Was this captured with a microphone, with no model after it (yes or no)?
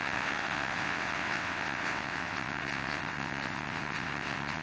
no